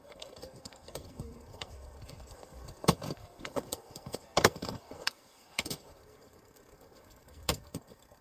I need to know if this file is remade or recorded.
remade